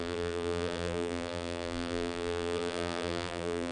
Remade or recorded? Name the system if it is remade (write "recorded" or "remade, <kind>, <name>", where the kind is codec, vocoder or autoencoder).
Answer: remade, vocoder, BigVGAN v2